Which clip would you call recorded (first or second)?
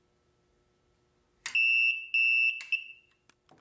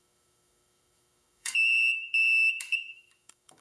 first